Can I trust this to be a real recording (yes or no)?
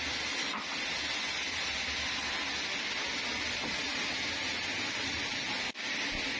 yes